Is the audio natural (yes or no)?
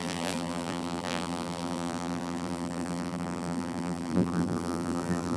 no